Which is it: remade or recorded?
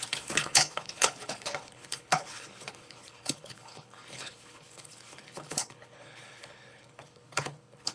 remade